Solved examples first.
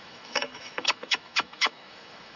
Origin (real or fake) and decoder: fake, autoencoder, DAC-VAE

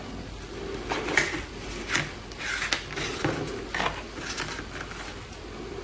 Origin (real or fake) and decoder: real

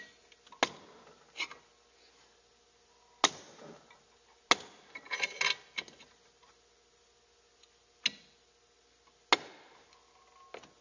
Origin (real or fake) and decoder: real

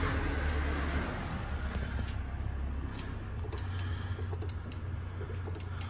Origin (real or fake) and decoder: real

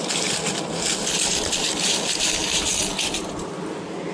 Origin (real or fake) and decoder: real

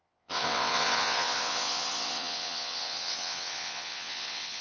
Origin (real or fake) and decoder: fake, vocoder, WaveNeXt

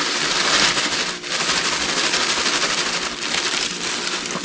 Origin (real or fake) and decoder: real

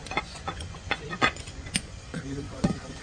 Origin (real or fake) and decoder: fake, vocoder, Vocos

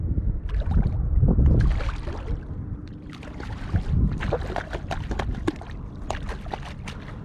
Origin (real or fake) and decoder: real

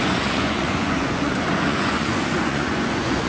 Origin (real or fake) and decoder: fake, vocoder, Vocos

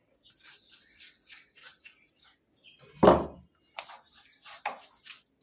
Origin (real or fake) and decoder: real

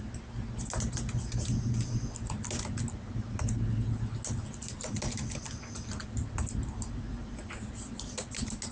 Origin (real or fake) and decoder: real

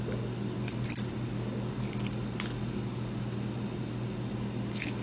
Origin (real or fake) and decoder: real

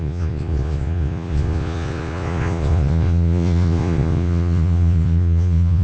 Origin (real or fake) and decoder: fake, vocoder, Vocos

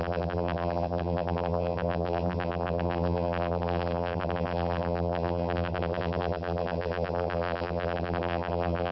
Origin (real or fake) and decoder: fake, vocoder, BigVGAN v2